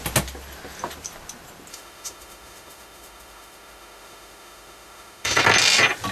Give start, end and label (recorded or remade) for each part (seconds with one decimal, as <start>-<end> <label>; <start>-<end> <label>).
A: 0.0-1.7 recorded; 1.7-5.4 remade; 5.4-6.1 recorded